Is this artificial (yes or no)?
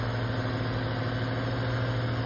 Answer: no